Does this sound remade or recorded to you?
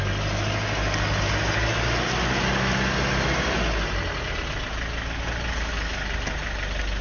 recorded